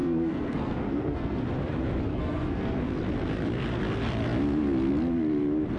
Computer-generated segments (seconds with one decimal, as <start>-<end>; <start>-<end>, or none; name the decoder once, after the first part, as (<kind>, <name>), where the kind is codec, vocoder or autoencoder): 0.0-1.4 (codec, SNAC); 2.1-2.8

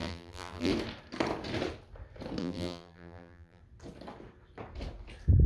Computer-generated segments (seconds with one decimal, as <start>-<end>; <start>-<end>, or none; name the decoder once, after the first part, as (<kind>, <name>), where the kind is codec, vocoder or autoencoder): 0.0-0.7 (vocoder, BigVGAN v2); 2.4-3.6